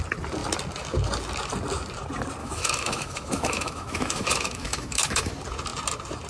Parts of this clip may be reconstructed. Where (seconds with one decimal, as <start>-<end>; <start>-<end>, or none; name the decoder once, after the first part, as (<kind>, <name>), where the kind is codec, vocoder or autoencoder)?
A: 2.4-5.3 (autoencoder, DAC-VAE)